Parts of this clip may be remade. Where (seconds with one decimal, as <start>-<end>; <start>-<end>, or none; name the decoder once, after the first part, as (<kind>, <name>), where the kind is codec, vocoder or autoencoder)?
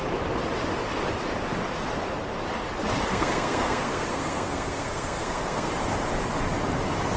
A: 3.1-5.7 (codec, SNAC)